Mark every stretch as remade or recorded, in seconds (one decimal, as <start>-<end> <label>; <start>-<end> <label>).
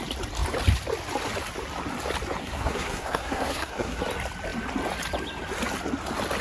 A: 0.0-2.4 recorded; 2.4-4.0 remade; 4.0-6.4 recorded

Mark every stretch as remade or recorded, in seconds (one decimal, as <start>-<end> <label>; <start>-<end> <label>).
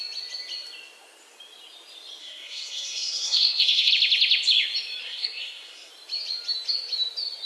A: 0.0-2.2 recorded; 2.2-3.9 remade; 3.9-5.0 recorded; 5.0-5.9 remade; 5.9-7.5 recorded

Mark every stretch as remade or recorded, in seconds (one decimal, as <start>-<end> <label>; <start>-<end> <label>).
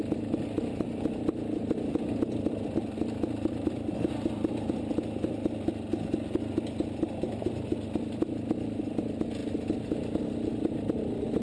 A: 0.0-11.4 recorded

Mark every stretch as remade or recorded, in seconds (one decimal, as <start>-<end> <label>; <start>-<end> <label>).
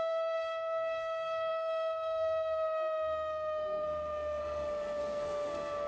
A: 0.0-5.9 remade